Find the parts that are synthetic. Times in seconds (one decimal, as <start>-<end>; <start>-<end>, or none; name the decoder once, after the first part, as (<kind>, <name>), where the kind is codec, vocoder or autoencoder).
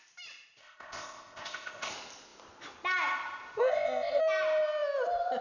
0.6-1.9 (codec, ZipCodec); 3.6-4.2